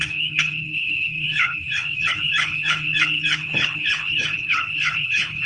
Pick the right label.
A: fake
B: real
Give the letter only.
A